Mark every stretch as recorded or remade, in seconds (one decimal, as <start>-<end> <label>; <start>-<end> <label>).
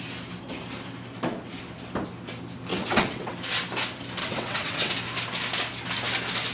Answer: 0.0-2.7 recorded; 2.7-3.3 remade; 3.3-4.2 recorded; 4.2-4.9 remade; 4.9-6.5 recorded